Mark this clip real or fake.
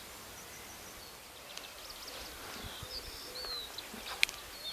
real